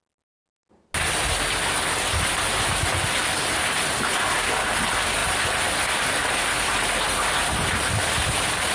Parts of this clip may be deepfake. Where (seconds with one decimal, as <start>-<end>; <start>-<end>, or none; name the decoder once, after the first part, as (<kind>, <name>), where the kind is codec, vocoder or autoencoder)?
none